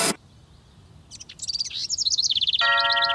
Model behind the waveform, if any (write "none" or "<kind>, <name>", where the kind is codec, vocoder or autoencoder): none